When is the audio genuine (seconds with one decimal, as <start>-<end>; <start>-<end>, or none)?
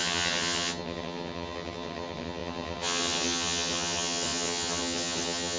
none